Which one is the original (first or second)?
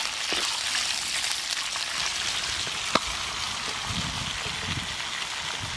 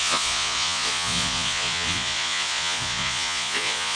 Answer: first